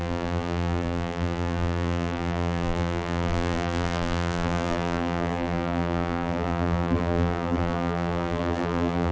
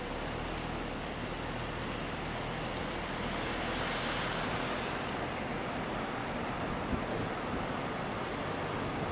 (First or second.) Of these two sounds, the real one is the second